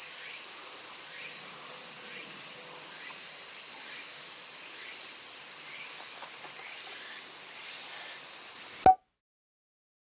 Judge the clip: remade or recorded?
recorded